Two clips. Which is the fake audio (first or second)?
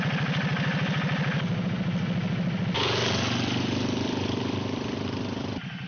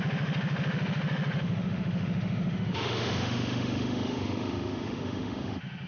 second